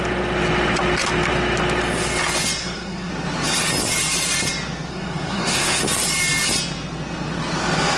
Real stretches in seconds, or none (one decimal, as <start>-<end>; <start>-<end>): 0.0-2.6; 3.1-4.9; 5.8-8.0